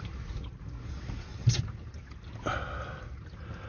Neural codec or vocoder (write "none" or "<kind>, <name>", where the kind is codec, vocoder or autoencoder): none